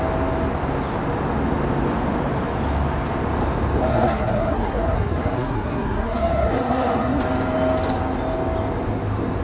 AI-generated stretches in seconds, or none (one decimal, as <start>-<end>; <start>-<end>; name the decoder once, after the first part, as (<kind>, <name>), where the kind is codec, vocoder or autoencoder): 3.9-7.2 (codec, SNAC)